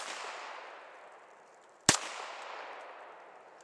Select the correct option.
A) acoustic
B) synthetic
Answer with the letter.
A